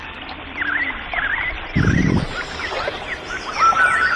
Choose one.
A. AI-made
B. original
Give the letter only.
B